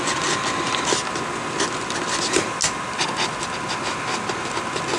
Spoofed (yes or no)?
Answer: no